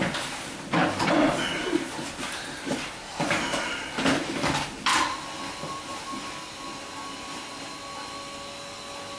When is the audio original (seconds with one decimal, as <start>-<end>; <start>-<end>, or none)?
0.0-1.5; 4.1-9.2